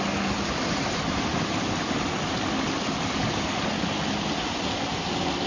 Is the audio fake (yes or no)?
no